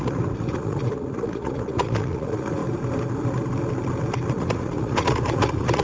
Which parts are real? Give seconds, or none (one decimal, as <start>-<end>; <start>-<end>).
2.6-4.3